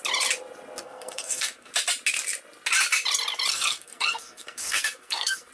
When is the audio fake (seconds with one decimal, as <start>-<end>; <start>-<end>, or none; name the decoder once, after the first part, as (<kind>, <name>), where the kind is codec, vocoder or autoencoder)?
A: 0.8-1.7 (codec, SNAC); 3.5-5.5